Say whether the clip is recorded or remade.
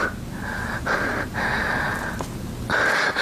recorded